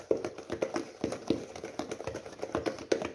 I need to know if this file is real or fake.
real